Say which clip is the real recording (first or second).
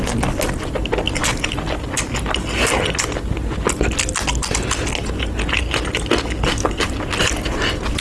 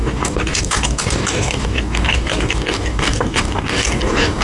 first